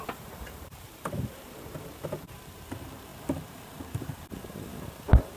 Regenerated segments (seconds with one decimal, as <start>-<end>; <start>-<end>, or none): 0.0-5.4

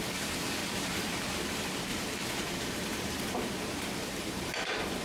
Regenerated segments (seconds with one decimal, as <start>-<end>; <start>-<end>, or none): 0.6-1.1; 1.9-5.0

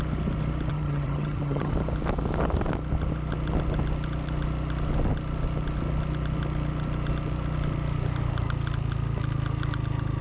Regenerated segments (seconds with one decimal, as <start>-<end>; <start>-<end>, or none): 0.7-1.7

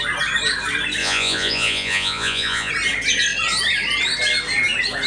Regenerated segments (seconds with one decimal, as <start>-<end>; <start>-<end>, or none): 1.0-2.7